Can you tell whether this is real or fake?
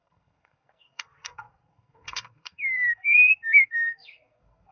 fake